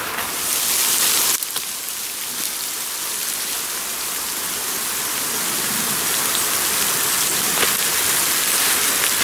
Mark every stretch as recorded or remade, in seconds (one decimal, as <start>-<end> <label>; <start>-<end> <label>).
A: 0.0-9.2 recorded